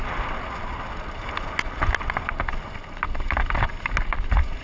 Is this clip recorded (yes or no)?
yes